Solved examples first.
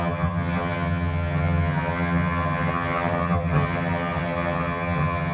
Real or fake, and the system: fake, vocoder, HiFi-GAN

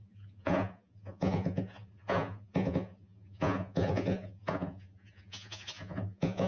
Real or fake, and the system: fake, vocoder, Vocos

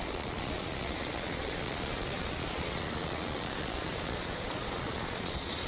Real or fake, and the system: fake, vocoder, Vocos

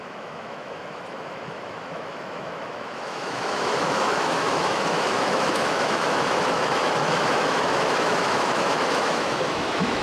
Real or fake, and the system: fake, autoencoder, DAC-VAE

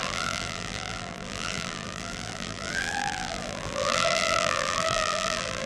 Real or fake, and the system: fake, vocoder, BigVGAN v2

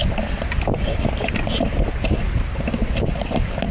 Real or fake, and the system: real